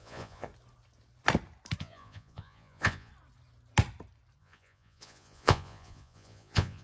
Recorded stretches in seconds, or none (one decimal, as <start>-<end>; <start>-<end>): 0.5-1.8; 3.1-4.4